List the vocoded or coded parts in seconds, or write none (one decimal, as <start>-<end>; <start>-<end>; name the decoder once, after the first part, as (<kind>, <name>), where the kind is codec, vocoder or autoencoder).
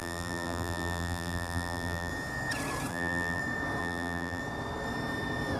0.0-2.1 (vocoder, BigVGAN v2); 2.9-3.4; 3.8-4.4